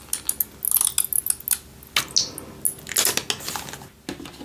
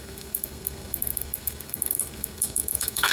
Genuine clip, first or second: first